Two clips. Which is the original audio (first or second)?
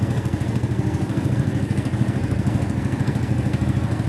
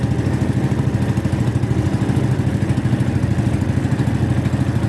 second